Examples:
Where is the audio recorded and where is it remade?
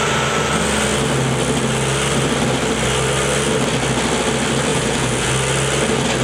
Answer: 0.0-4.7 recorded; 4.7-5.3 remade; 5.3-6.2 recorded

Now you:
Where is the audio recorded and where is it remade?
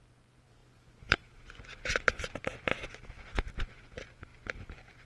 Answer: 0.0-2.7 remade; 2.7-3.6 recorded; 3.6-5.1 remade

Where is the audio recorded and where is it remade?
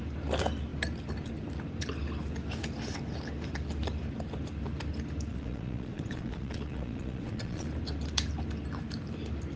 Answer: 0.0-5.3 recorded; 5.3-7.7 remade; 7.7-9.6 recorded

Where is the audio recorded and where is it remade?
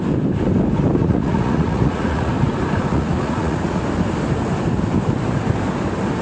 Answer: 0.0-1.0 recorded; 1.0-2.3 remade; 2.3-2.9 recorded; 2.9-3.8 remade; 3.8-6.2 recorded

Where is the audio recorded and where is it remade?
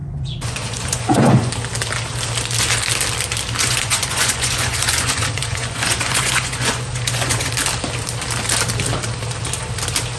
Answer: 0.0-1.5 remade; 1.5-3.6 recorded; 3.6-7.5 remade; 7.5-10.2 recorded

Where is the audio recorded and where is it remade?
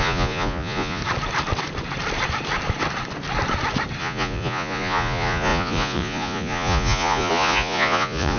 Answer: 0.0-1.0 remade; 1.0-4.0 recorded; 4.0-8.4 remade